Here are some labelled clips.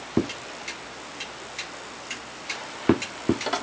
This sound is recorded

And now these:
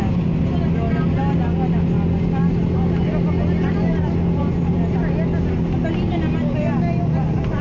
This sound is recorded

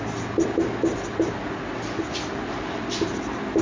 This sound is recorded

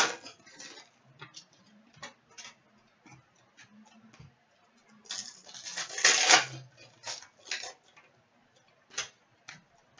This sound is recorded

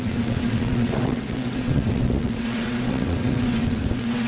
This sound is remade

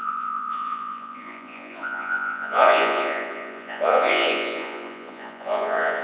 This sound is remade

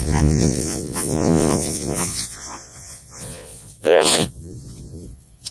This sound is remade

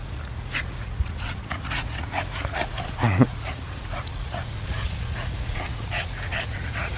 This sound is remade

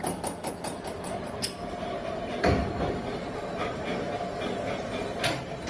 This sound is recorded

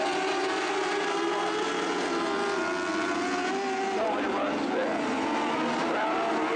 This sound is recorded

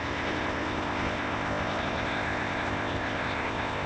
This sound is remade